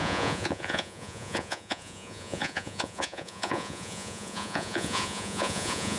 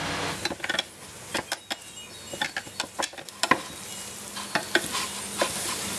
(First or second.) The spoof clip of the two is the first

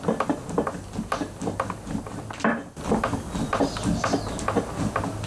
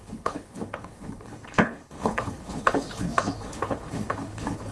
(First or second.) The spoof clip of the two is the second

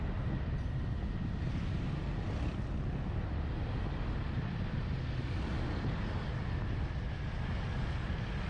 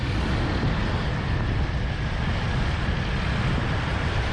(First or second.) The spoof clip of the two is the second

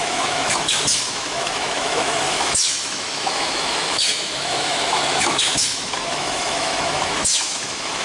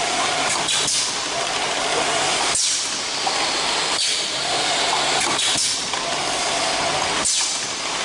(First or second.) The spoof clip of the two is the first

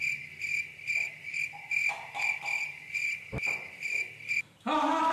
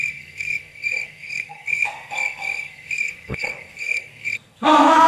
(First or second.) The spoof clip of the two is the second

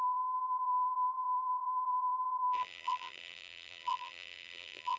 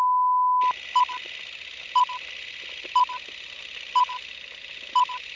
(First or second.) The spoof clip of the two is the first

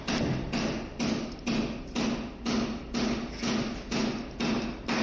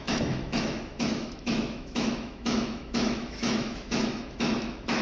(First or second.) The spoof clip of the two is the second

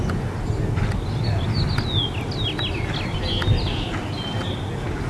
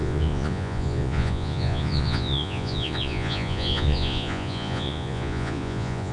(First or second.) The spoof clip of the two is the second